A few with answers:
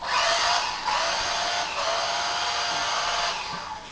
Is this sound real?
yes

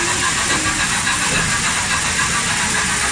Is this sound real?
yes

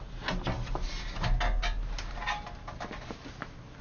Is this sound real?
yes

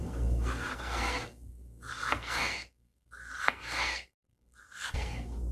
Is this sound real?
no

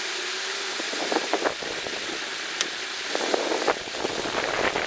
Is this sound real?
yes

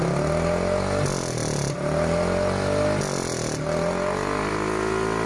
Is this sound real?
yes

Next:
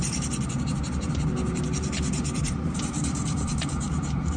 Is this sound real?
no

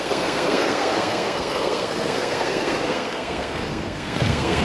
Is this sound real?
no